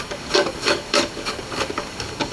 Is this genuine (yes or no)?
no